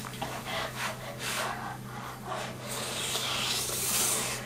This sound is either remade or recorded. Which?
remade